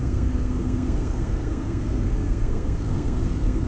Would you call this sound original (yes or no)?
no